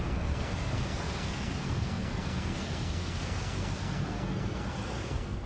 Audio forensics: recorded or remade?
remade